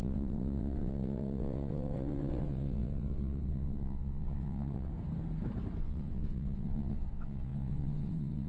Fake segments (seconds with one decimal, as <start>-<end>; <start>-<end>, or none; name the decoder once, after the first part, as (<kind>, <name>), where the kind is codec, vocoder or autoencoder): 0.0-4.9 (vocoder, WaveNeXt); 5.8-8.5